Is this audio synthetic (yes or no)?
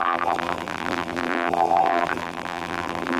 yes